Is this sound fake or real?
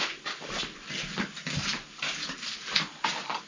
real